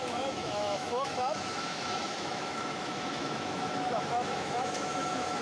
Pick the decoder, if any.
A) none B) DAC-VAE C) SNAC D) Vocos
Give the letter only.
B